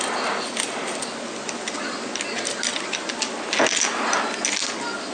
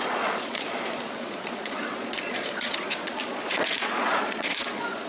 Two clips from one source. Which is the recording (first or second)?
first